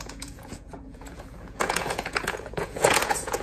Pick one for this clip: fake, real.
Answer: fake